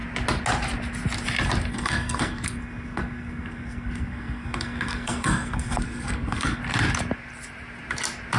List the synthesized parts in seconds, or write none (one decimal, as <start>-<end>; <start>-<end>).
1.7-6.6